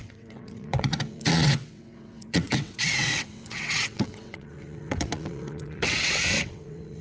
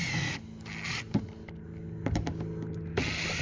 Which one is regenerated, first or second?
first